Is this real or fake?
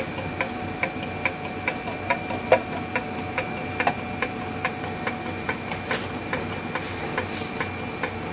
real